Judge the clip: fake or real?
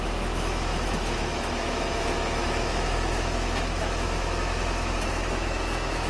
fake